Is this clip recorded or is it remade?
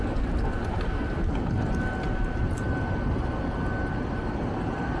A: recorded